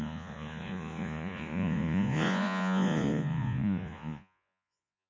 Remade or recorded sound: remade